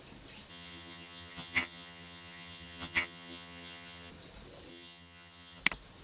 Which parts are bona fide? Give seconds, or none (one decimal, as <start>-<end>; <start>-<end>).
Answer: 0.0-0.5; 4.1-4.7; 5.6-6.0